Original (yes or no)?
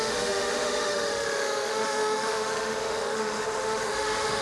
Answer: no